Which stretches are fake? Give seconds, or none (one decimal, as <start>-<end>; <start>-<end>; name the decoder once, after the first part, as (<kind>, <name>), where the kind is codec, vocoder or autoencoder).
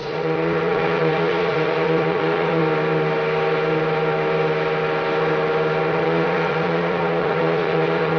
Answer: 0.0-2.6 (vocoder, Vocos); 5.9-8.2